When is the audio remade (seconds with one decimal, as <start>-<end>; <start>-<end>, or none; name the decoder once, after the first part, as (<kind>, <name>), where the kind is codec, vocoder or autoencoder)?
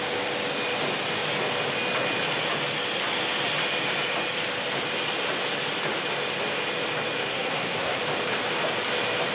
7.2-8.0 (codec, SNAC)